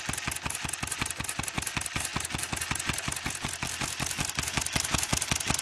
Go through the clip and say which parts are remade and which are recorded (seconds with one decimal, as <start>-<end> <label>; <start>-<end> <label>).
0.0-5.6 recorded